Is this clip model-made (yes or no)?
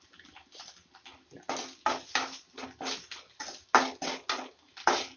no